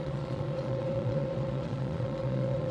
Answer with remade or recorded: remade